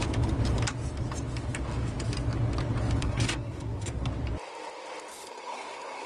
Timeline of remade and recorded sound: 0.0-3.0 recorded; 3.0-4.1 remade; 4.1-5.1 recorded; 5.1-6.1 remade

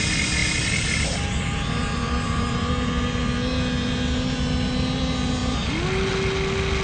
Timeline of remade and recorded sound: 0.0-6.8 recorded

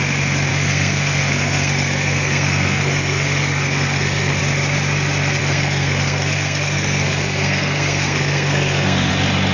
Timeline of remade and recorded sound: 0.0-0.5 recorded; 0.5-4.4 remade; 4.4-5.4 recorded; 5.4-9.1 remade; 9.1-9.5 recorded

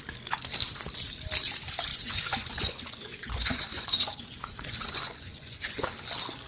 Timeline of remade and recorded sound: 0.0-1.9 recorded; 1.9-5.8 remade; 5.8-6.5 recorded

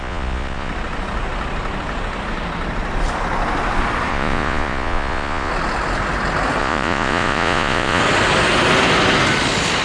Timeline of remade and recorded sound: 0.0-0.7 remade; 0.7-4.1 recorded; 4.1-5.5 remade; 5.5-6.6 recorded; 6.6-8.0 remade; 8.0-9.8 recorded

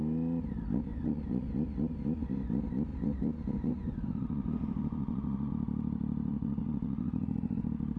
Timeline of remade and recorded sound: 0.0-0.9 recorded; 0.9-1.5 remade; 1.5-2.9 recorded; 2.9-5.5 remade; 5.5-6.3 recorded; 6.3-7.6 remade; 7.6-8.0 recorded